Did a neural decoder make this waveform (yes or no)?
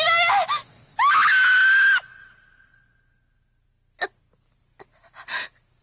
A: no